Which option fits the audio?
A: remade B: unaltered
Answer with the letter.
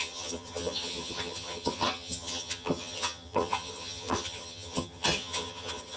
A